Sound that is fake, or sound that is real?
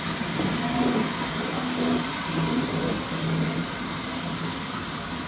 real